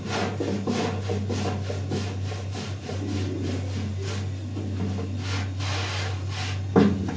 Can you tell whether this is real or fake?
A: real